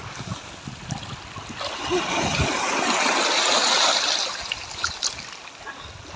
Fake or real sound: real